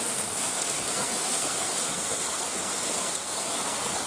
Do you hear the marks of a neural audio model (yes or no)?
yes